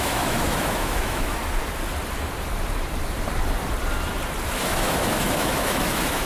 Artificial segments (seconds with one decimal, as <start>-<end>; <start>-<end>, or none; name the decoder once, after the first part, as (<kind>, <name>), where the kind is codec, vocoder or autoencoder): 0.0-1.4 (autoencoder, DAC-VAE); 4.6-6.3